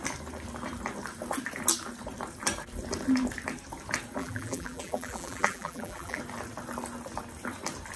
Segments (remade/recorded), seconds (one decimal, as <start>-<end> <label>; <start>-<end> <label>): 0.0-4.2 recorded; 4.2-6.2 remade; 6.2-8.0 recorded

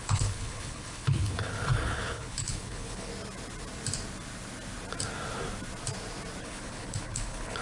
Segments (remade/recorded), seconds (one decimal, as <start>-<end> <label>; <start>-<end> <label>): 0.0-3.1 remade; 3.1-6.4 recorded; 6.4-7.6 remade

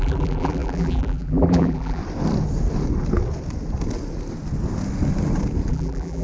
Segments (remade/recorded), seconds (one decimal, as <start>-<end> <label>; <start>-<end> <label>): 0.0-2.0 remade; 2.0-5.7 recorded; 5.7-6.2 remade

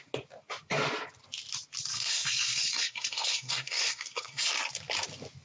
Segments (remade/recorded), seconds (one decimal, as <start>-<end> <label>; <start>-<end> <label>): 0.0-1.9 recorded; 1.9-4.5 remade; 4.5-5.4 recorded